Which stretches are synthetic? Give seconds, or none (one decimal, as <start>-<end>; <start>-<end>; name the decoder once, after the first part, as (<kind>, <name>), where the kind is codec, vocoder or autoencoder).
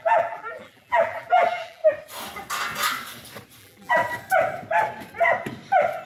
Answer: 0.0-1.8 (vocoder, BigVGAN v2); 3.6-4.0